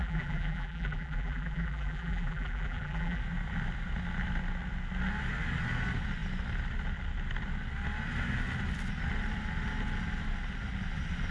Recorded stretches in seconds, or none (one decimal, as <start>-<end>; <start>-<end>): 3.2-11.3